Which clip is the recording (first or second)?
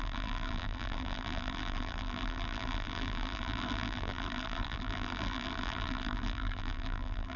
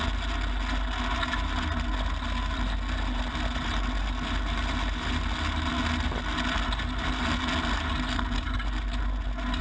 second